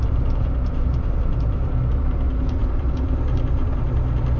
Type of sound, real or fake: fake